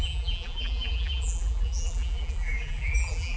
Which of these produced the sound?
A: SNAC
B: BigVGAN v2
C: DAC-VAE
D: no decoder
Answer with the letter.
B